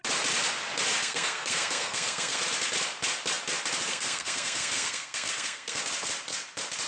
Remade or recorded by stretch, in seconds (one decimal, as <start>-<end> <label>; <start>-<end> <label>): 0.0-1.0 recorded; 1.0-2.4 remade; 2.4-3.9 recorded; 3.9-5.8 remade; 5.8-6.9 recorded